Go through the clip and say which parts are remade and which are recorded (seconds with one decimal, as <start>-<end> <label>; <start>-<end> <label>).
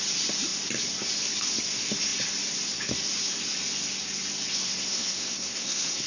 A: 0.0-4.6 recorded; 4.6-6.1 remade